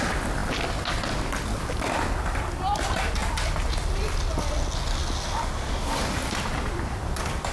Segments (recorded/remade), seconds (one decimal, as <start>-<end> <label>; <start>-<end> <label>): 0.0-7.5 recorded